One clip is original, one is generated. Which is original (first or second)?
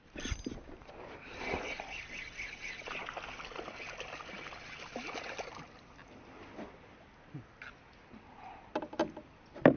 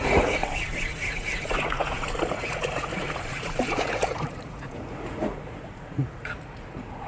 first